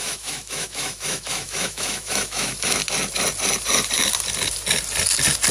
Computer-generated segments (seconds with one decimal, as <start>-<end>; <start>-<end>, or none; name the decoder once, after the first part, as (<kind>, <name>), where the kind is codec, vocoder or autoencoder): 0.0-2.8 (autoencoder, DAC-VAE)